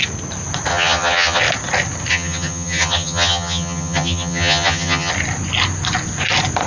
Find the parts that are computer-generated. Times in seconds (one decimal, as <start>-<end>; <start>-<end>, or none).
0.7-1.4; 2.1-5.1